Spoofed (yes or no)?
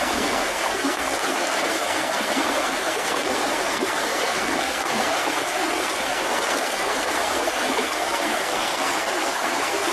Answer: yes